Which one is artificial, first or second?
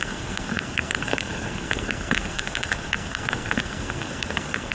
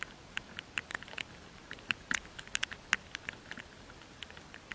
first